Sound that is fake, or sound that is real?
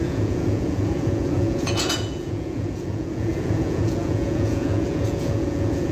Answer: fake